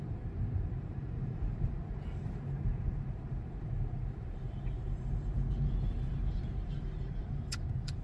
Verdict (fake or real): fake